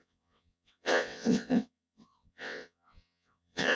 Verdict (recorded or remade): remade